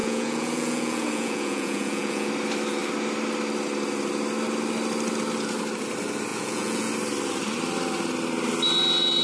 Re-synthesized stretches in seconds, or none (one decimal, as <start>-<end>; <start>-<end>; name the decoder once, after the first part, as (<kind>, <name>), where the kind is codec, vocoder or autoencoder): 0.0-2.3 (vocoder, Vocos); 6.3-6.9